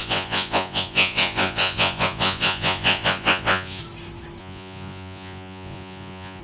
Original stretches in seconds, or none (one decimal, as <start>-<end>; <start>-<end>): 3.8-4.4